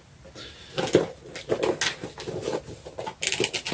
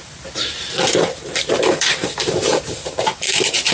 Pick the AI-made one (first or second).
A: second